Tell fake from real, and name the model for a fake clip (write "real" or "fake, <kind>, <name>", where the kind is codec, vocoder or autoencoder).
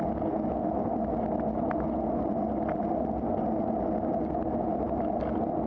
real